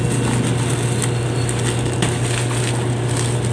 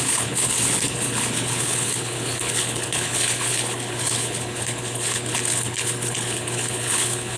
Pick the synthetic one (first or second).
second